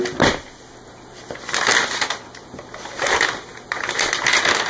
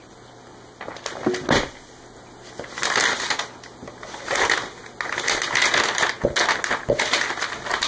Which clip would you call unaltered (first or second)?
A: second